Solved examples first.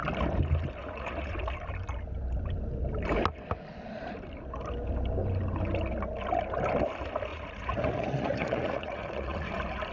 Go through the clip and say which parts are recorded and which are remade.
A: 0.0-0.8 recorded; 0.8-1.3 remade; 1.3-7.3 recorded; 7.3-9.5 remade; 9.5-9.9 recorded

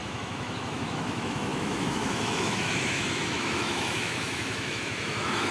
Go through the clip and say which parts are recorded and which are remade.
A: 0.0-5.5 remade

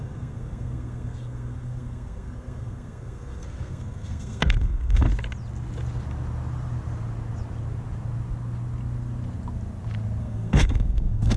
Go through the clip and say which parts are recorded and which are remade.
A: 0.0-5.1 remade; 5.1-10.2 recorded; 10.2-11.4 remade

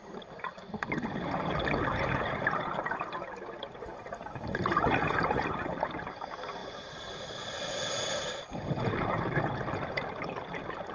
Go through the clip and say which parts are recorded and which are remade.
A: 0.0-1.9 recorded; 1.9-5.9 remade; 5.9-6.6 recorded; 6.6-9.5 remade; 9.5-10.9 recorded

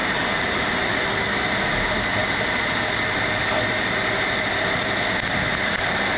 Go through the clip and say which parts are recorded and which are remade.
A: 0.0-6.2 recorded